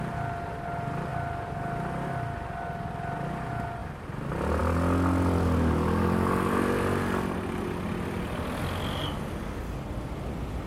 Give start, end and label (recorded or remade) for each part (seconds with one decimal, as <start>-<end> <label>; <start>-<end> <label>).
0.0-10.7 recorded